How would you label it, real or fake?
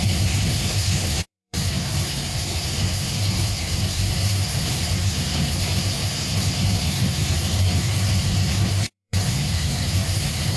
fake